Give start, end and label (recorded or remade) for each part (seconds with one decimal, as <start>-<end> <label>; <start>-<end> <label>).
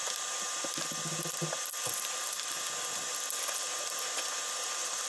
0.0-5.1 recorded